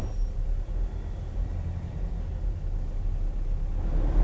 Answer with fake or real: real